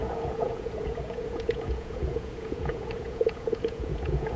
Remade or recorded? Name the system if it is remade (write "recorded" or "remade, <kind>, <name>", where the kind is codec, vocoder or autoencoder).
remade, vocoder, Vocos